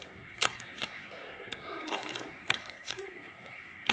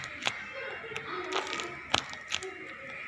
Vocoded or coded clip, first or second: first